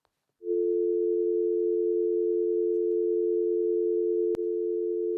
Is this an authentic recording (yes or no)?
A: yes